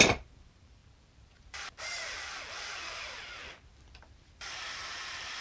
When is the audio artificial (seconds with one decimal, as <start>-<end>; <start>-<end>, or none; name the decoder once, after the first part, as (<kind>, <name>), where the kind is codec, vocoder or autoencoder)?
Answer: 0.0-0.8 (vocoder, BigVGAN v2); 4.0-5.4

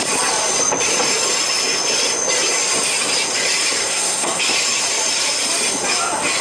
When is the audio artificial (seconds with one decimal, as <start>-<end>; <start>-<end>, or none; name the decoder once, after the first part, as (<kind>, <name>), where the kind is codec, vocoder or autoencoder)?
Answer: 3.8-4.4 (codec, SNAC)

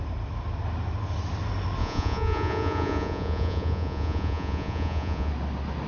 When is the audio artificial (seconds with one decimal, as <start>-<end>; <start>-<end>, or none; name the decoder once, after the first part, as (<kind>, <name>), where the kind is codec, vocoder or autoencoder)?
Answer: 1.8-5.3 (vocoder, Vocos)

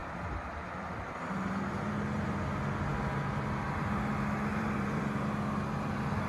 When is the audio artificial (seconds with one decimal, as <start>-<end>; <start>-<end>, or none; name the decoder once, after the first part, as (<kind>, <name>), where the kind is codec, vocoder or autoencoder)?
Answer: 0.0-1.8 (vocoder, BigVGAN v2); 4.5-5.0

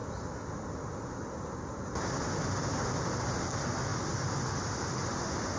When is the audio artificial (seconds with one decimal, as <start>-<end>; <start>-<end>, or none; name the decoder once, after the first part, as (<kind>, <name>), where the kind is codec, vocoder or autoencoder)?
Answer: none

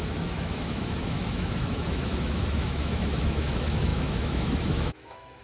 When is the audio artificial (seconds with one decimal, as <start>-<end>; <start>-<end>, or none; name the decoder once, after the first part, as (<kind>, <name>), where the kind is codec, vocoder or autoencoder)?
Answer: 0.0-5.4 (autoencoder, DAC-VAE)

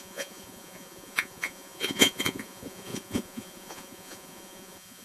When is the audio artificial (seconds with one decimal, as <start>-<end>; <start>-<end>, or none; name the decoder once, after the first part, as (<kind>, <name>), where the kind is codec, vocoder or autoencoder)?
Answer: 0.0-5.0 (vocoder, Vocos)

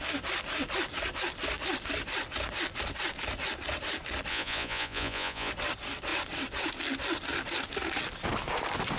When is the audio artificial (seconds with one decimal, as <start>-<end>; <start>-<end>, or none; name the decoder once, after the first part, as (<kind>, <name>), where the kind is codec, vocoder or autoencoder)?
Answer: 4.3-5.5 (vocoder, Vocos)